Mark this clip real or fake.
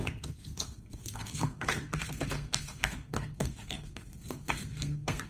fake